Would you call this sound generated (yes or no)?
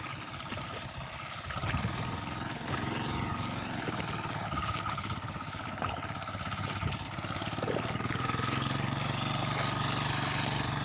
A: no